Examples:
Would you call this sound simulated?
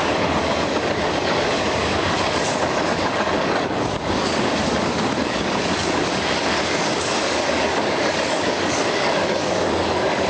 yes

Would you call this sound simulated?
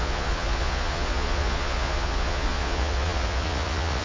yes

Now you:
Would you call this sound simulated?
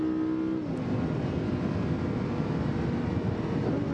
no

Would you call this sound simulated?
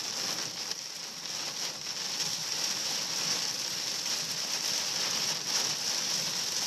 no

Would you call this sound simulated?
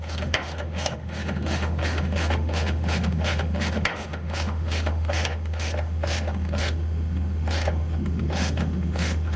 yes